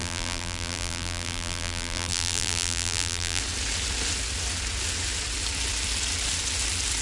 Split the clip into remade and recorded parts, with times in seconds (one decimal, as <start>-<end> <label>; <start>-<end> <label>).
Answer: 0.0-3.4 remade; 3.4-7.0 recorded